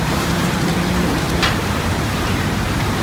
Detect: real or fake fake